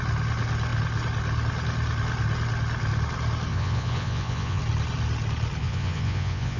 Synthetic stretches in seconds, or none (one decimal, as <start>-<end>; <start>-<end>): 3.5-4.6; 5.6-6.6